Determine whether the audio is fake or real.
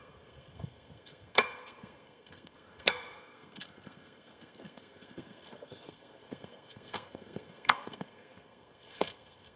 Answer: fake